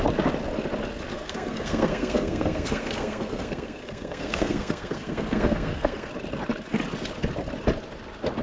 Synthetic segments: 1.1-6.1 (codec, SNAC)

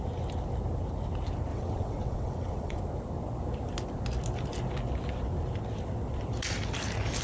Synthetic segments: 1.5-2.8 (vocoder, WaveNeXt)